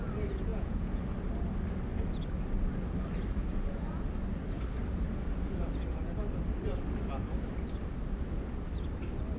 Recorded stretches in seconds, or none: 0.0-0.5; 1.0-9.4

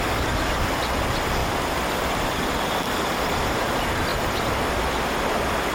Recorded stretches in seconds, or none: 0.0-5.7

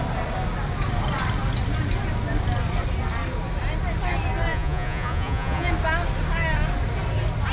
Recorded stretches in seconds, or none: 0.0-4.5; 5.7-7.5